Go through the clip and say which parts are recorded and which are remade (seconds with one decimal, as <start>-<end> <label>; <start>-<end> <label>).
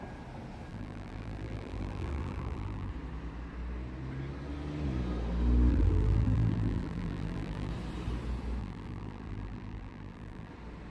0.0-0.7 recorded; 0.7-2.9 remade; 2.9-5.7 recorded; 5.7-7.7 remade; 7.7-8.6 recorded; 8.6-10.5 remade; 10.5-10.9 recorded